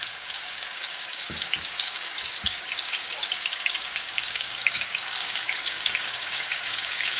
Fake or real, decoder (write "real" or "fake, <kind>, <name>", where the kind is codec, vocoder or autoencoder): fake, codec, DAC